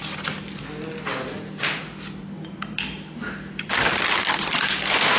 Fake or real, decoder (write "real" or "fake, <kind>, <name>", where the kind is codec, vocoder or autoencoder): real